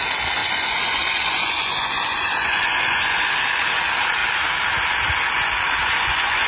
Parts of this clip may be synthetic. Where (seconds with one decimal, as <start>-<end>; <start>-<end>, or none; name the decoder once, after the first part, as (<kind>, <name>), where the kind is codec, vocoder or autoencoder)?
0.4-3.3 (vocoder, Vocos); 5.8-6.5